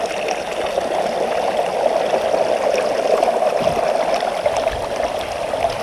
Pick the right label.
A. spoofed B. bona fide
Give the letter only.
B